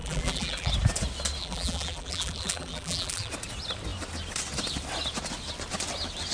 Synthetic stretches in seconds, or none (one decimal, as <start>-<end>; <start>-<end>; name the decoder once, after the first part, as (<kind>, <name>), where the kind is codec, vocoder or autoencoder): 0.0-0.7 (vocoder, BigVGAN v2); 1.4-3.3